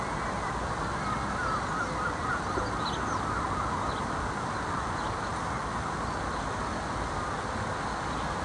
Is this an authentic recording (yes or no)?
yes